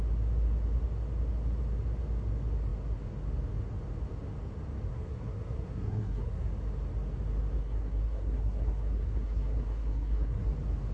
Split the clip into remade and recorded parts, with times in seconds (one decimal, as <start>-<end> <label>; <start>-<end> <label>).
0.0-4.9 recorded; 4.9-6.5 remade; 6.5-7.6 recorded; 7.6-10.5 remade; 10.5-10.9 recorded